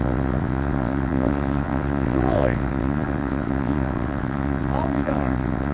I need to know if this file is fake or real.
fake